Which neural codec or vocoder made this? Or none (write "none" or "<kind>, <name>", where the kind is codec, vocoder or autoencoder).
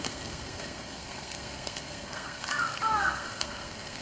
codec, SNAC